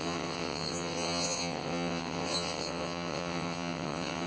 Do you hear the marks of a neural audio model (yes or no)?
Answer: yes